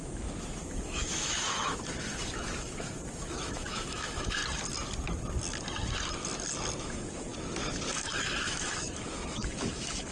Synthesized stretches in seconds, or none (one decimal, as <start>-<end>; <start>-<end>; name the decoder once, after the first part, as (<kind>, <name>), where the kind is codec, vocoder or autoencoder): 0.0-4.4 (autoencoder, DAC-VAE); 6.8-7.3; 7.9-10.1